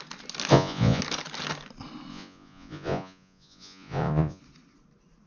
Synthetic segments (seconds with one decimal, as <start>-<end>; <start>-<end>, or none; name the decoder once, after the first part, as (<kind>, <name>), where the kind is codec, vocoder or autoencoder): 0.5-1.0 (vocoder, Vocos); 2.1-4.4